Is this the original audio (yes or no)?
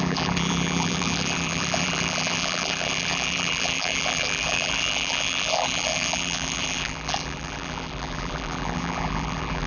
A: no